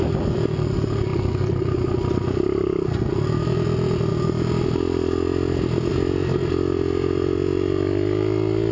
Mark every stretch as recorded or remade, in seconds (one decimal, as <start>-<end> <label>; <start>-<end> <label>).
0.0-8.7 recorded